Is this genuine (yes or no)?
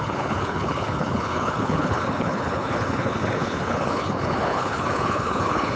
no